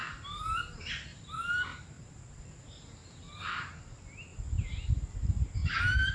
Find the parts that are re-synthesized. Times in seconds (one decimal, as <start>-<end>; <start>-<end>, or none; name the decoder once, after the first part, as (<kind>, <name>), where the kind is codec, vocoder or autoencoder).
0.0-3.7 (vocoder, BigVGAN v2); 4.7-5.5